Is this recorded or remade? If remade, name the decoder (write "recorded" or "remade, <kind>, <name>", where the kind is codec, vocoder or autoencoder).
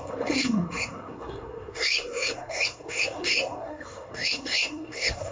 remade, codec, SNAC